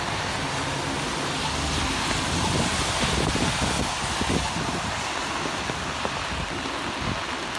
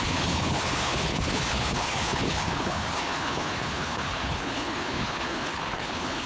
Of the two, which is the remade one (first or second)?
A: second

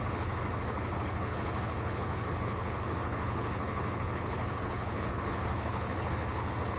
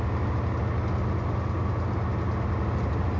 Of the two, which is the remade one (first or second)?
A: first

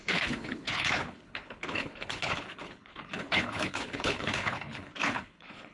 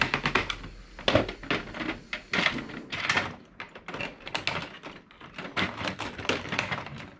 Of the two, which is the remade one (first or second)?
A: first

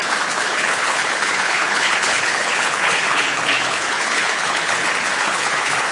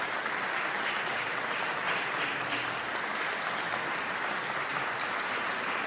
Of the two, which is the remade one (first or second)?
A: first